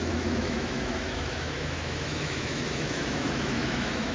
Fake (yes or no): yes